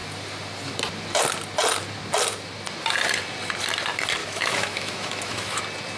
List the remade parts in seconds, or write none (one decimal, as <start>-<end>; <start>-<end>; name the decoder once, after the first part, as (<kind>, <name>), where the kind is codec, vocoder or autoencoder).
4.2-5.6 (autoencoder, DAC-VAE)